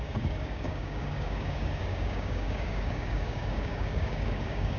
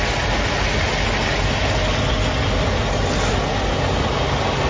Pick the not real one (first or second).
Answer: first